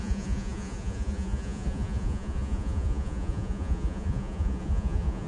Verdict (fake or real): fake